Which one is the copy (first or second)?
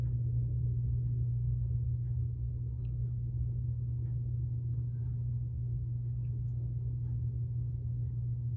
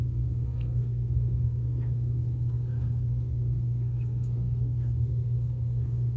second